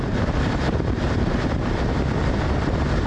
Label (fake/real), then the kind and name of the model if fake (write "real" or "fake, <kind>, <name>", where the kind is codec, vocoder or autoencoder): fake, vocoder, BigVGAN v2